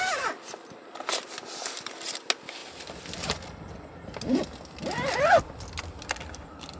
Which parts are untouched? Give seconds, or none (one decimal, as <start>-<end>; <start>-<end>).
0.0-6.8